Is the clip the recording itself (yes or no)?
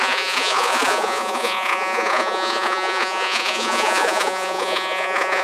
no